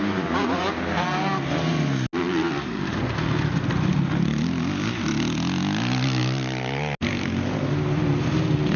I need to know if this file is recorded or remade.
recorded